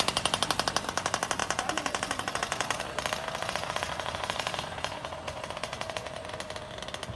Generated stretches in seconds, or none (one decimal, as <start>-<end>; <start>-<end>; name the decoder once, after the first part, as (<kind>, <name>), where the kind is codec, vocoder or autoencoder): 1.4-2.8 (vocoder, Vocos); 3.4-6.4